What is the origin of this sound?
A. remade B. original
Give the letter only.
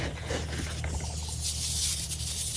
B